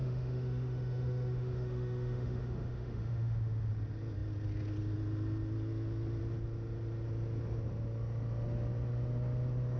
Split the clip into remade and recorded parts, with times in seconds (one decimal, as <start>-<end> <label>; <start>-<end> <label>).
0.0-3.7 remade; 3.7-9.8 recorded

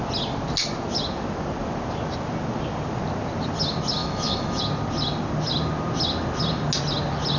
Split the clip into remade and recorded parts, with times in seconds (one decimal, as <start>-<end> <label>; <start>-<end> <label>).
0.0-4.0 recorded; 4.0-4.6 remade; 4.6-7.4 recorded

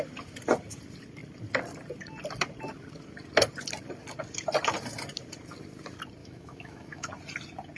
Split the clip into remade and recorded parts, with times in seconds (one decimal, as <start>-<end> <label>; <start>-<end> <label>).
0.0-6.2 recorded; 6.2-7.1 remade; 7.1-7.8 recorded

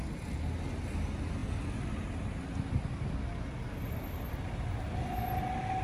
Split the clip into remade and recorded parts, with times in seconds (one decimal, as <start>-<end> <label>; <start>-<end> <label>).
0.0-5.8 recorded

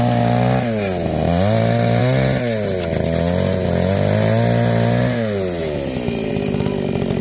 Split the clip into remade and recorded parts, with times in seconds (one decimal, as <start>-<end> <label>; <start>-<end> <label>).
0.0-7.2 recorded